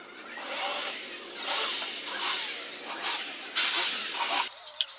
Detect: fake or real real